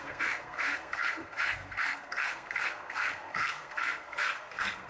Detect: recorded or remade remade